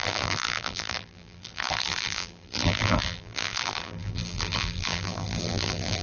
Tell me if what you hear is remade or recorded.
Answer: remade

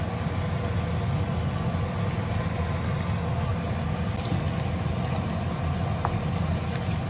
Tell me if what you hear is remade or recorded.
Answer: recorded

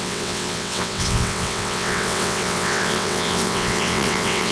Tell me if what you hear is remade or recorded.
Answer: remade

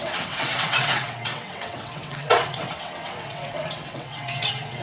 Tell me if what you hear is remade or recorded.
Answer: remade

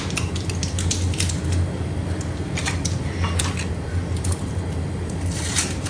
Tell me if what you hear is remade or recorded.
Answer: recorded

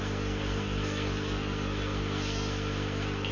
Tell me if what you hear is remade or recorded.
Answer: remade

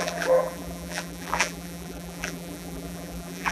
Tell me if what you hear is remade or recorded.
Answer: remade